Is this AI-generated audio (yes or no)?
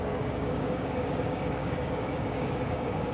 yes